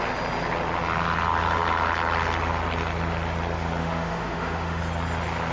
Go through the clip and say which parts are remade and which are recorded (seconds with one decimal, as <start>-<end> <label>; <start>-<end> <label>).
0.0-3.8 recorded; 3.8-4.8 remade; 4.8-5.5 recorded